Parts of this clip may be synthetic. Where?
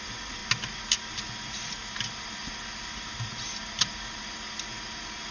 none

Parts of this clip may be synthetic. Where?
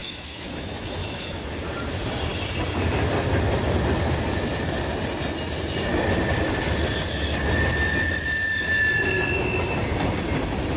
0.0-1.4 (autoencoder, DAC-VAE)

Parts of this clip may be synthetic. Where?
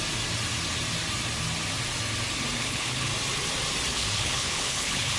2.6-3.1 (codec, HILCodec); 3.9-5.2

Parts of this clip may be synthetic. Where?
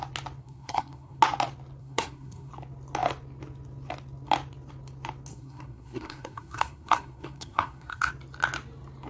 0.4-1.2 (codec, SNAC); 1.8-2.5; 5.3-8.1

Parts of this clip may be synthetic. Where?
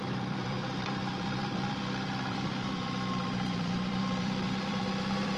0.0-5.4 (vocoder, BigVGAN v2)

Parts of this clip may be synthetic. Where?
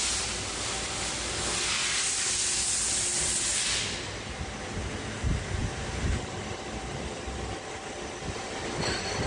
none